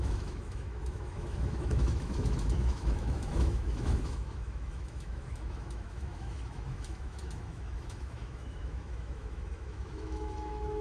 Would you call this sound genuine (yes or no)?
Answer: no